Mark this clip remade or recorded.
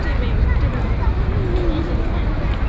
recorded